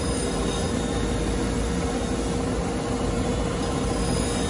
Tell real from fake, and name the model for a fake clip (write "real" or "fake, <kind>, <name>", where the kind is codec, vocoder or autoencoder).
real